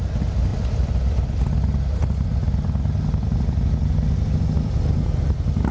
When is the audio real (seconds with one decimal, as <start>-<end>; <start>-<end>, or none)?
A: 0.0-5.7